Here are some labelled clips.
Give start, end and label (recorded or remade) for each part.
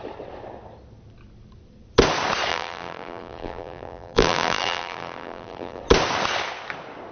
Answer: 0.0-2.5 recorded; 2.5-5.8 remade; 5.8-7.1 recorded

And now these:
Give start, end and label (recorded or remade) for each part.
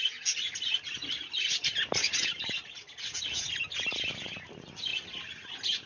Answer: 0.0-1.0 recorded; 1.0-2.1 remade; 2.1-5.9 recorded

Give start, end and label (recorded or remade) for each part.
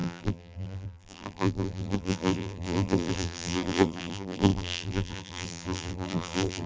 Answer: 0.0-6.7 remade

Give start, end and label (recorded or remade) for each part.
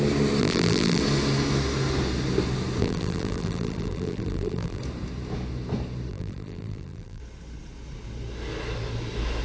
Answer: 0.0-0.4 recorded; 0.4-1.0 remade; 1.0-2.8 recorded; 2.8-4.8 remade; 4.8-6.1 recorded; 6.1-7.2 remade; 7.2-9.4 recorded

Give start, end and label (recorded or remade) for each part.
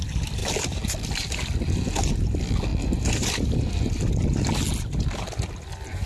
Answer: 0.0-2.7 recorded; 2.7-3.9 remade; 3.9-6.1 recorded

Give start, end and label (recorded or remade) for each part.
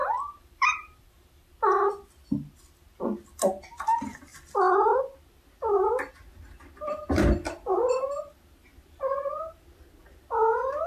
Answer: 0.0-1.5 remade; 1.5-10.9 recorded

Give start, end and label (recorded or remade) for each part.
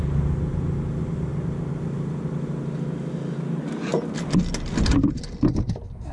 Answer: 0.0-6.1 recorded